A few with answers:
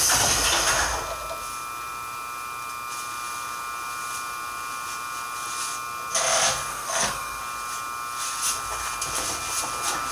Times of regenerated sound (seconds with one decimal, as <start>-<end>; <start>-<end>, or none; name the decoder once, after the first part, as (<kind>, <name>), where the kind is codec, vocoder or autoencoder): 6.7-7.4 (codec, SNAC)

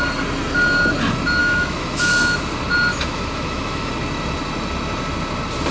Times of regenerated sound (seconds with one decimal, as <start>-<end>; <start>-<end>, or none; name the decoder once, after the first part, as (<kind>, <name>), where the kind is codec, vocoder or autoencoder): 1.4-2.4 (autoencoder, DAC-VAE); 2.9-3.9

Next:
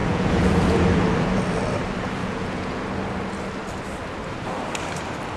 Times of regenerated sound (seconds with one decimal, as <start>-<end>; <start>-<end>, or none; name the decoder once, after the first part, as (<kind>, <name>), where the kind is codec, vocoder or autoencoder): 0.0-1.0 (vocoder, Vocos); 2.2-2.8

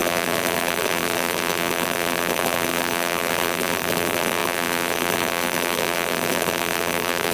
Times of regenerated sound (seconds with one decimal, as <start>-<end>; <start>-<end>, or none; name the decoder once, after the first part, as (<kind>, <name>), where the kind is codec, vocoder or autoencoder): 0.0-7.3 (vocoder, BigVGAN v2)

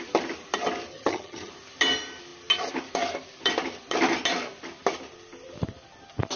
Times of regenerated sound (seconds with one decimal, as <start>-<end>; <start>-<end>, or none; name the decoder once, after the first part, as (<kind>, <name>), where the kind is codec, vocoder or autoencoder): 0.9-1.5 (vocoder, HiFi-GAN)

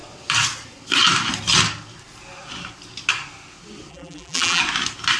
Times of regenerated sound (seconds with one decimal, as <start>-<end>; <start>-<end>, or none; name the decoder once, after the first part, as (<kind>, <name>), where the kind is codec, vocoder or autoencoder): 3.9-4.6 (vocoder, BigVGAN v2)